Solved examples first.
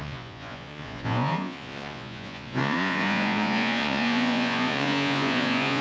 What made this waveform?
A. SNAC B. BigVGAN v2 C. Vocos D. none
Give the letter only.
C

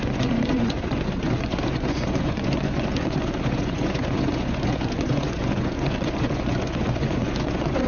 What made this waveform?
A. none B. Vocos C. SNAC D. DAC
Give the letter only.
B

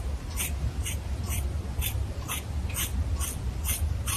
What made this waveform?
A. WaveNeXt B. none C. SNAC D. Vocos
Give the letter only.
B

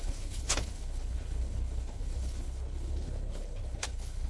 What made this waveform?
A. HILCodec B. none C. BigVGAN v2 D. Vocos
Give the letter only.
A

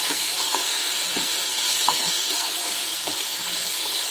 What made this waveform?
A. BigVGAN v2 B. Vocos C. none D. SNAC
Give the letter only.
D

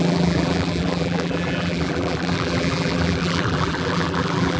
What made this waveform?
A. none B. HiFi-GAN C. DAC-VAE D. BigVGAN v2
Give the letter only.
D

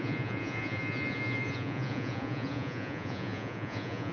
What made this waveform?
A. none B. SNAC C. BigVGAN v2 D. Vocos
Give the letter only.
D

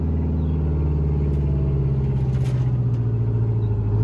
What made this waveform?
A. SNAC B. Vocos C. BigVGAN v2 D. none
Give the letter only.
D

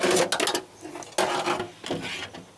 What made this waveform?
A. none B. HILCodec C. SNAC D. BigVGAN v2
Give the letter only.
A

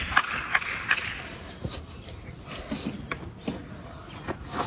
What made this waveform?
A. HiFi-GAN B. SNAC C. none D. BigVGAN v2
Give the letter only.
C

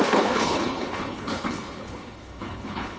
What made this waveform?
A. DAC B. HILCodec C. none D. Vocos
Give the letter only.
B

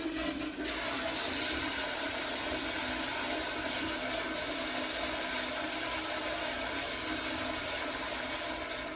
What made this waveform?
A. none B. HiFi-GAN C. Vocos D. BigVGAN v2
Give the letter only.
A